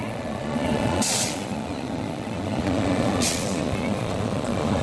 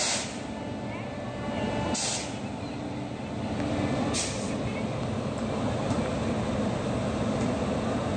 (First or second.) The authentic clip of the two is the second